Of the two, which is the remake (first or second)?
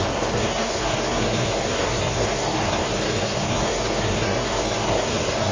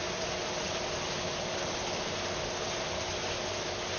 first